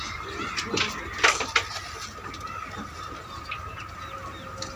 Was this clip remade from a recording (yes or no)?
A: no